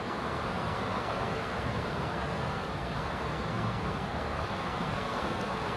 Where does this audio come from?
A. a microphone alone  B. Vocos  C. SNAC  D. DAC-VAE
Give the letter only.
C